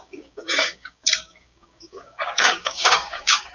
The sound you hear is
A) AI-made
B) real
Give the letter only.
A